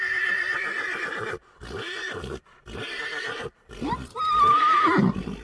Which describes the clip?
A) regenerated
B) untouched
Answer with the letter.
A